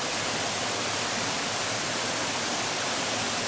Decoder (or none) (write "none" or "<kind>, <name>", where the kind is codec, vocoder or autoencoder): none